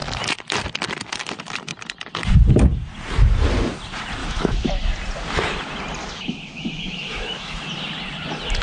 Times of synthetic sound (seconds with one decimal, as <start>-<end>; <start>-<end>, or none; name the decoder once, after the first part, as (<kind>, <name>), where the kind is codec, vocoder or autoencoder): 4.2-4.7 (autoencoder, DAC-VAE); 6.0-7.6